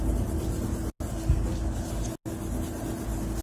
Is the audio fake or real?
real